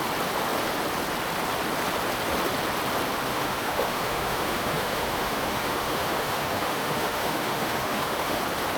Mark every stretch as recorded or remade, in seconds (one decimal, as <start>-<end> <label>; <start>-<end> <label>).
0.0-3.3 recorded; 3.3-8.4 remade; 8.4-8.8 recorded